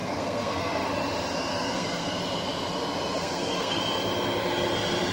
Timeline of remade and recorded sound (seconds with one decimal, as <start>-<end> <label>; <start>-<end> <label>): 0.0-0.9 remade; 0.9-1.5 recorded; 1.5-2.2 remade; 2.2-3.1 recorded; 3.1-3.8 remade; 3.8-5.1 recorded